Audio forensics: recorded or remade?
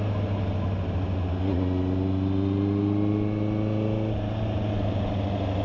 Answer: recorded